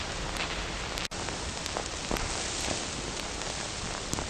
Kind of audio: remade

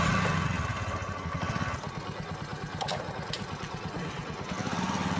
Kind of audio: recorded